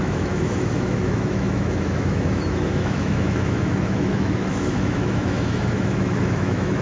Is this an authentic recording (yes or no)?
no